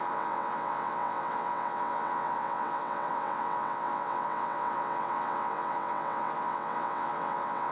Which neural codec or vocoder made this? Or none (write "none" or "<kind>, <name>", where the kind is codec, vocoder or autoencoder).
vocoder, WaveNeXt